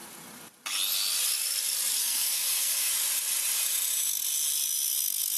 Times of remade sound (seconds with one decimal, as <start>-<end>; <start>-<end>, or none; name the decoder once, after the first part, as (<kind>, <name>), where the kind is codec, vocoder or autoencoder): 2.0-2.9 (codec, SNAC)